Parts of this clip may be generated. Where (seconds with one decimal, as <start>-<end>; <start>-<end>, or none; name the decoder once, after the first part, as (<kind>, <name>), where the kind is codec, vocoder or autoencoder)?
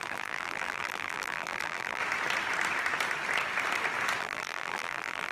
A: 0.0-2.0 (vocoder, BigVGAN v2); 4.2-5.3